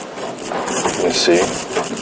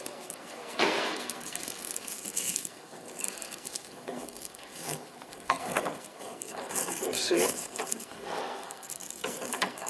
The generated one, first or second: second